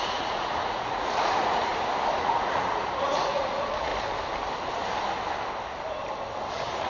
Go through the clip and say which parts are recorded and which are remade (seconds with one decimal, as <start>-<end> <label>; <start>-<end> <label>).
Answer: 0.0-1.7 remade; 1.7-2.2 recorded; 2.2-3.9 remade; 3.9-6.5 recorded; 6.5-6.9 remade

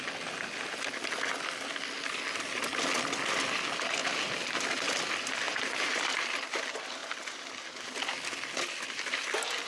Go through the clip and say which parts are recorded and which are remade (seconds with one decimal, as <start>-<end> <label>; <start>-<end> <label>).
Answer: 0.0-9.7 recorded